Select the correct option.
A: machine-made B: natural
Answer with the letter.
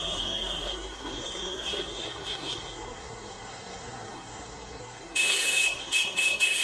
A